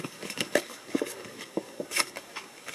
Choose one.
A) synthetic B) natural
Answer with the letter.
A